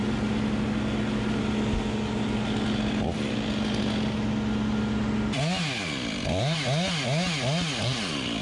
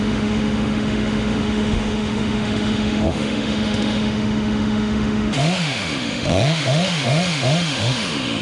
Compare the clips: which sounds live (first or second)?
first